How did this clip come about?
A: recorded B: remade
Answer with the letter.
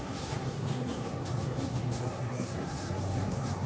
B